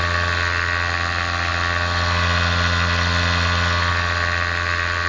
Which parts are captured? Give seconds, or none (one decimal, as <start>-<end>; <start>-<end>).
0.0-5.1